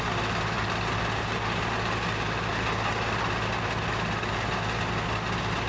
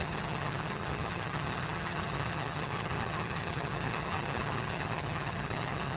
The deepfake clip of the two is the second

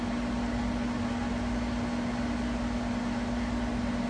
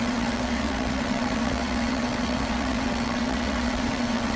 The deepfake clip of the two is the second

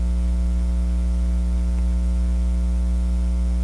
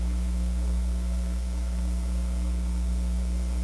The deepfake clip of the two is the second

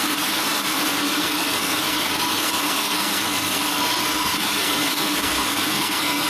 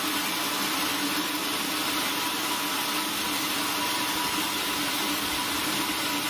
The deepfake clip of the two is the first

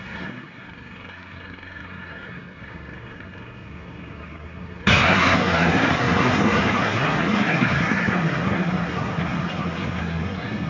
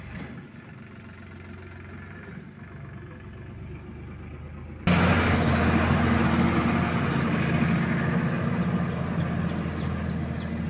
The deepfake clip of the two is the first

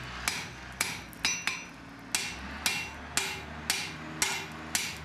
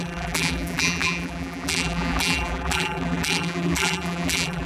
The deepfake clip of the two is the second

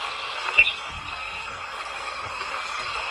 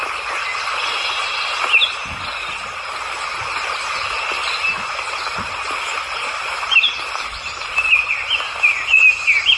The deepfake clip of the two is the first